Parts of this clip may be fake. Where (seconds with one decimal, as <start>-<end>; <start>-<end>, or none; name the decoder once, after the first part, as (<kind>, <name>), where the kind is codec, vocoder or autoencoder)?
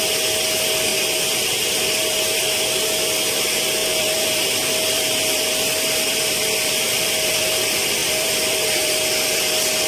0.9-2.6 (vocoder, BigVGAN v2); 3.8-7.5; 8.0-9.5